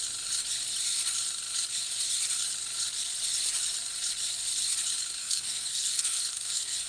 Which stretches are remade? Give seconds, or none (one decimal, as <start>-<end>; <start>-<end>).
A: 5.2-6.9